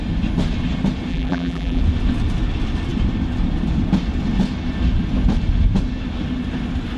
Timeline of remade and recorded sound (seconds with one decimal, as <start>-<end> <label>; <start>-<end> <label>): 0.0-1.1 recorded; 1.1-1.8 remade; 1.8-7.0 recorded